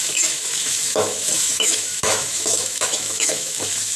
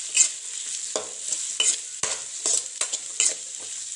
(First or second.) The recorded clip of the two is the second